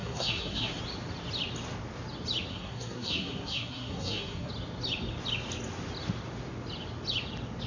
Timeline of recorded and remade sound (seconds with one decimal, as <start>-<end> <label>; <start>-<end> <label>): 0.0-0.8 remade; 0.8-2.5 recorded; 2.5-4.5 remade; 4.5-7.7 recorded